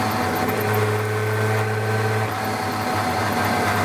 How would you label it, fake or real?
real